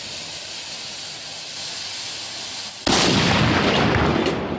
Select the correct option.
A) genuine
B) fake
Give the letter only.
A